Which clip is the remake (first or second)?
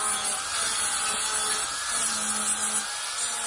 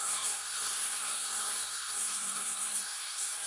second